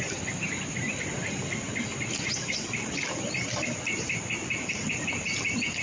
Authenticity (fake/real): real